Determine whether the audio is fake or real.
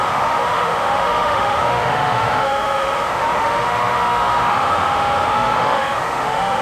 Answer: fake